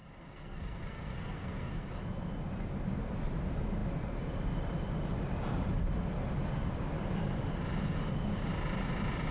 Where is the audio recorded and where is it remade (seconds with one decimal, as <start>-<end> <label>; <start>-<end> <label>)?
0.0-1.9 remade; 1.9-9.3 recorded